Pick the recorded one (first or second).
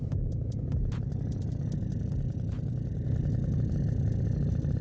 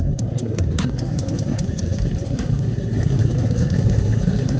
first